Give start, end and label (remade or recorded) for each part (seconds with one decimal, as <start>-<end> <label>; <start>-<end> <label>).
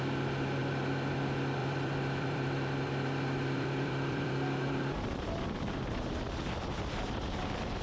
0.0-1.6 recorded; 1.6-6.3 remade; 6.3-7.8 recorded